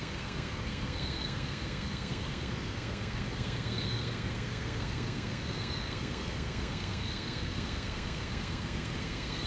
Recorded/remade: remade